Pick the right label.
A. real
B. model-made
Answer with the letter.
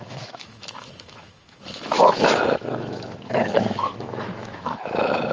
B